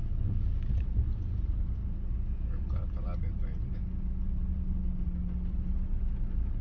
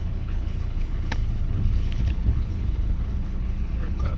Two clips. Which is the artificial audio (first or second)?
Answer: second